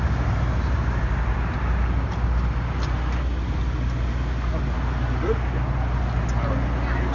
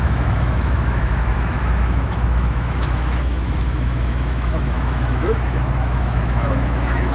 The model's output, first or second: second